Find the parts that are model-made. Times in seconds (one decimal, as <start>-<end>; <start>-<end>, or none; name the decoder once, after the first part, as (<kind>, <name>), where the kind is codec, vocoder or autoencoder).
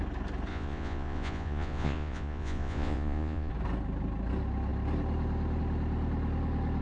0.5-3.5 (vocoder, Vocos)